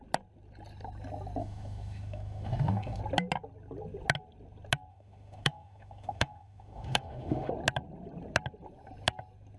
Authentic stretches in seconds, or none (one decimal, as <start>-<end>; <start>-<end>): 0.0-1.4; 3.0-4.9; 7.5-9.6